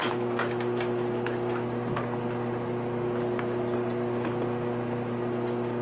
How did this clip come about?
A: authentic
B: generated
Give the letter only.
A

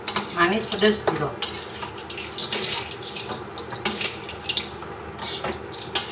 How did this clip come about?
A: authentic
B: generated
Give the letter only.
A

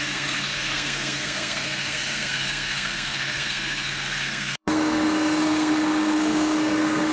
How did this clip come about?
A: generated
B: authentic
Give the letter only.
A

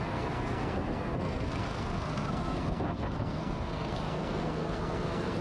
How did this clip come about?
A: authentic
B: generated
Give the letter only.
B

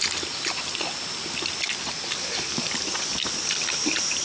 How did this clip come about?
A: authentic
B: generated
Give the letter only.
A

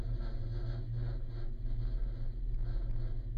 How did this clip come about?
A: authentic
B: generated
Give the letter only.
A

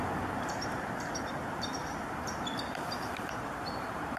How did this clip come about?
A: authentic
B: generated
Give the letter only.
B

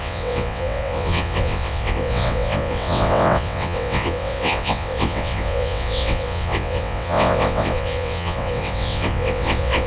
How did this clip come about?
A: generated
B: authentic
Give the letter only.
A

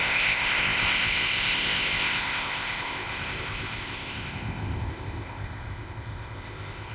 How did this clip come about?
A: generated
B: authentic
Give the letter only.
A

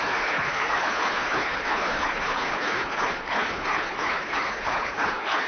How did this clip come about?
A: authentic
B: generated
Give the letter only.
B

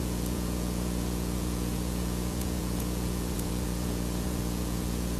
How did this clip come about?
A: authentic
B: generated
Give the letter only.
B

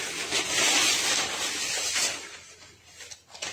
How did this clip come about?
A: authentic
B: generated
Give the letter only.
A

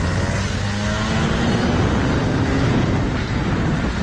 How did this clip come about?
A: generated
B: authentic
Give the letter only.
B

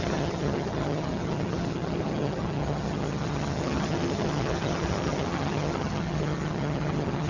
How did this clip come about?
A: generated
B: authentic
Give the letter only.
A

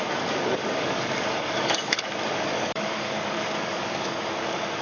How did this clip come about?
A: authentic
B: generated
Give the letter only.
B